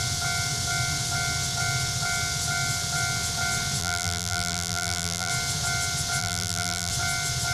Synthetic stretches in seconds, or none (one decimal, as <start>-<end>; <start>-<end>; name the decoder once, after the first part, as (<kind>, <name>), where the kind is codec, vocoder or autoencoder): 3.8-5.3 (vocoder, BigVGAN v2); 6.2-6.9